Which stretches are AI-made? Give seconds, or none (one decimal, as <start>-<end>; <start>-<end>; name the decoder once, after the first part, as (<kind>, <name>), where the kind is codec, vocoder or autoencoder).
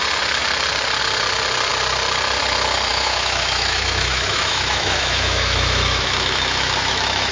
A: 2.9-7.3 (autoencoder, DAC-VAE)